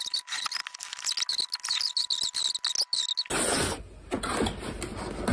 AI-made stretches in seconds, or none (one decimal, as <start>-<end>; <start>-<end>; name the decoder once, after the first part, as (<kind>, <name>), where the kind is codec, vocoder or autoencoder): none